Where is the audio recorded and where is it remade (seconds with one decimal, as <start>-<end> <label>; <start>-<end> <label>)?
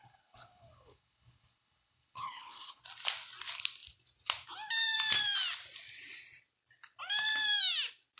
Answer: 0.0-2.8 remade; 2.8-8.2 recorded